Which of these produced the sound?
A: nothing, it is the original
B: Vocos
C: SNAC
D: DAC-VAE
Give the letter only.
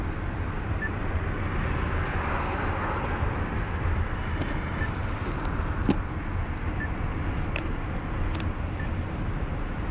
A